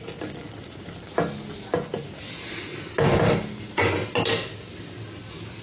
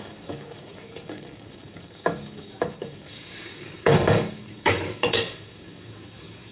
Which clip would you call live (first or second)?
first